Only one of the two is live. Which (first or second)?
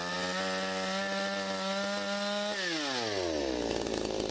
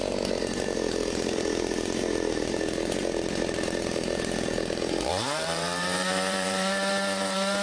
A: first